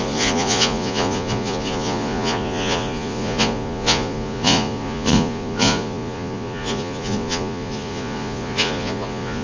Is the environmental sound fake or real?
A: fake